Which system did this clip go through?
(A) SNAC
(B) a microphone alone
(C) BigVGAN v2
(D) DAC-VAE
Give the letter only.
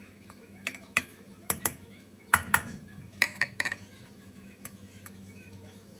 D